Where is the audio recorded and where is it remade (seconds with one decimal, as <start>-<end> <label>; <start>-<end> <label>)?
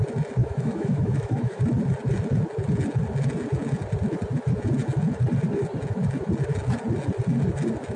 0.0-0.4 recorded; 0.4-1.6 remade; 1.6-8.0 recorded